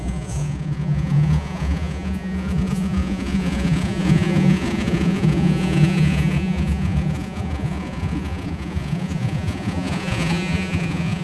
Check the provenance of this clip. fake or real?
fake